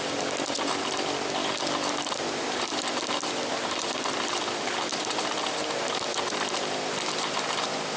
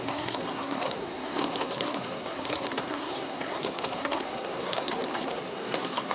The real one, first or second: first